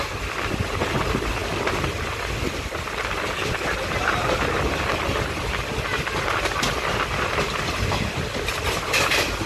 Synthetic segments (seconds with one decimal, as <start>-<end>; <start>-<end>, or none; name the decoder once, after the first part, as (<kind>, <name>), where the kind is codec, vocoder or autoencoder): none